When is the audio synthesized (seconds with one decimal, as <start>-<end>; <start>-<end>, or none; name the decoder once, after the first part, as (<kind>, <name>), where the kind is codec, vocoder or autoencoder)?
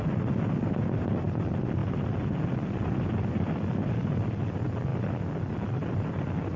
0.0-6.6 (vocoder, BigVGAN v2)